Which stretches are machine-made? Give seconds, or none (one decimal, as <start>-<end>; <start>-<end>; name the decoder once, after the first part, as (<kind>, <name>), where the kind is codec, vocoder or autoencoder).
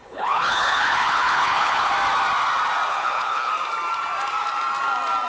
0.0-1.9 (codec, HILCodec); 2.9-3.5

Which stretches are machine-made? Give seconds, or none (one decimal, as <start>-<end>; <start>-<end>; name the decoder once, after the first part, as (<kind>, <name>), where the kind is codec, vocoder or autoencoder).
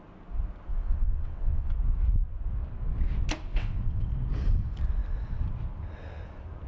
0.7-1.7 (vocoder, WaveNeXt); 3.5-4.1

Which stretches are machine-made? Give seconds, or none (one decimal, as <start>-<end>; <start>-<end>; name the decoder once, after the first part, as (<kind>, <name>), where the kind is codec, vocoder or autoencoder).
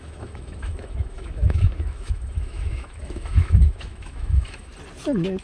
0.0-4.7 (autoencoder, DAC-VAE)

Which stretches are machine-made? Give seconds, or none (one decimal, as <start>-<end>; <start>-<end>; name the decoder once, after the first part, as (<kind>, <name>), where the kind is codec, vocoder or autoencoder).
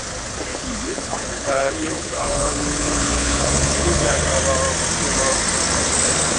0.5-4.2 (codec, HILCodec)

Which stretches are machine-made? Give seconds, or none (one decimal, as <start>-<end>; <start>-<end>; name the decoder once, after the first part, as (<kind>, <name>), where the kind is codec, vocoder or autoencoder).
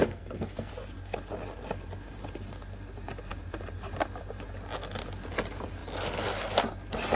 0.0-0.7 (codec, SNAC)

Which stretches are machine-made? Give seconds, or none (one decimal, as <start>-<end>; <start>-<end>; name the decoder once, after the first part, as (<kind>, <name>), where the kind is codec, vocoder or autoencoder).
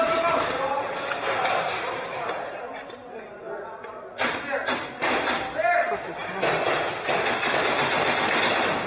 none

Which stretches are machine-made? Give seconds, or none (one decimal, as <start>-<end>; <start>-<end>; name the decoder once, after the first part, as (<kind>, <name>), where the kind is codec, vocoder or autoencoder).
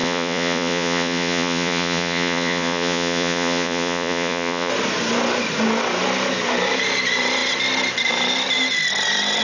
0.0-4.7 (vocoder, Vocos)